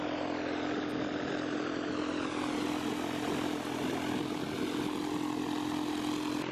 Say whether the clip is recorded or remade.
recorded